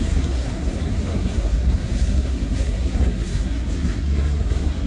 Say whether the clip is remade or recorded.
remade